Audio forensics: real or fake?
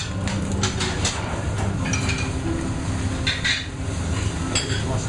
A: real